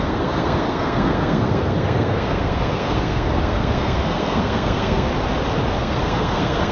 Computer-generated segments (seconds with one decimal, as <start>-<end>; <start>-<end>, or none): 0.0-5.1; 5.8-6.7